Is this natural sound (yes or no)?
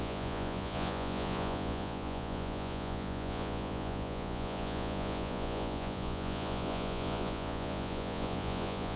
no